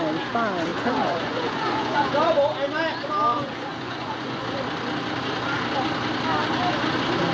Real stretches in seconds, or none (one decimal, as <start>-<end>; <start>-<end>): 0.0-0.7; 2.1-3.3; 4.4-7.3